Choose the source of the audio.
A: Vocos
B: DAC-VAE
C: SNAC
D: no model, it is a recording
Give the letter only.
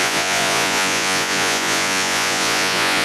A